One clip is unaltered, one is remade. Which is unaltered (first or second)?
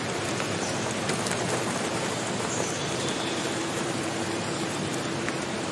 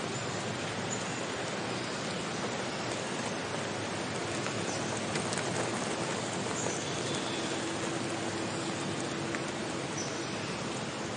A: second